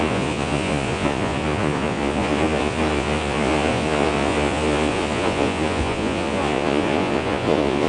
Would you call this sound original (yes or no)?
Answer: no